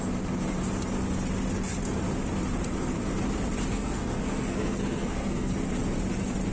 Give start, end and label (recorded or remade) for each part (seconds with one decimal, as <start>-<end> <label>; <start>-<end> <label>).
0.0-3.7 recorded; 3.7-5.5 remade; 5.5-6.5 recorded